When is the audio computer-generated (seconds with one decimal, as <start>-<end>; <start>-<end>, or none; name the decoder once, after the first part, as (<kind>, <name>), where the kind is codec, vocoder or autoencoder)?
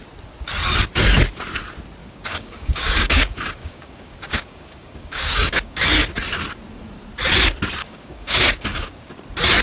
2.0-5.8 (codec, DAC); 7.8-9.1